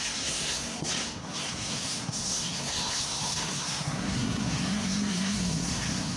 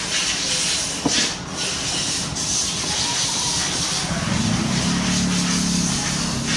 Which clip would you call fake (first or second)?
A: first